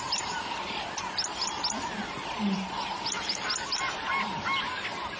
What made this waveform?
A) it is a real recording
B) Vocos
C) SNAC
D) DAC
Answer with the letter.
A